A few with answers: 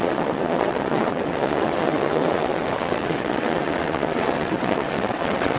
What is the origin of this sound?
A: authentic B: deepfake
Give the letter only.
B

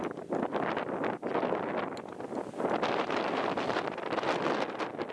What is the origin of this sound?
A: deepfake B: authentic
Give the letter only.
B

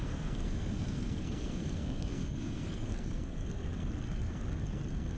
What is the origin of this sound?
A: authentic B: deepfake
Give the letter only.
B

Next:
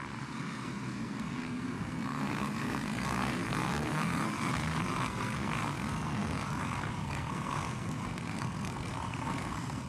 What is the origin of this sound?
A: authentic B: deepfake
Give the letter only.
B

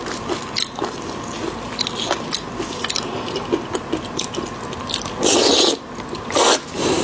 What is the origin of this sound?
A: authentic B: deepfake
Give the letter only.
A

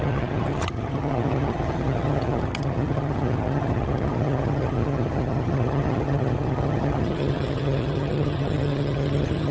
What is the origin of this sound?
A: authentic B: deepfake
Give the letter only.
B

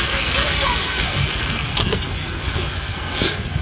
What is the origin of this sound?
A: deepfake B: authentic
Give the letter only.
A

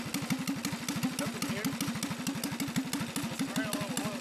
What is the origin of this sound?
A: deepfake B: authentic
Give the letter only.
B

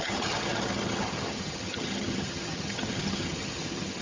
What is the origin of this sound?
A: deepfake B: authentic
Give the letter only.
A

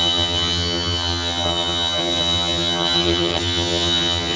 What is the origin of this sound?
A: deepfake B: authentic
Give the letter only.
A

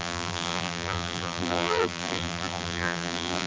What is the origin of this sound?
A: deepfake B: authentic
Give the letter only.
A